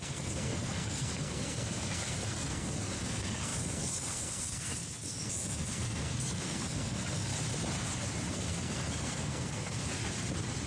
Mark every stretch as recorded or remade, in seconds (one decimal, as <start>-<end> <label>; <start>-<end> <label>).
0.0-7.3 remade; 7.3-8.3 recorded; 8.3-10.0 remade; 10.0-10.7 recorded